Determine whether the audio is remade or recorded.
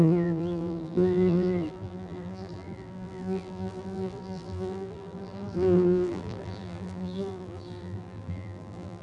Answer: remade